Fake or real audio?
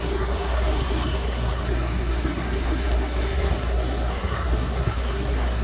fake